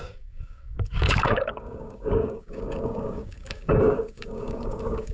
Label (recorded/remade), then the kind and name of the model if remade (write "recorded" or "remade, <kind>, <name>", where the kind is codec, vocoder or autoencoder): remade, codec, DAC